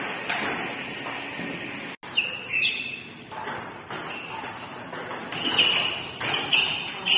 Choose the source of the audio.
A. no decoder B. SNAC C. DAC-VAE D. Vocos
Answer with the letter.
A